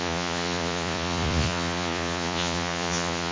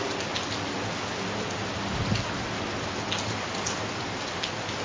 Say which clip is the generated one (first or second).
first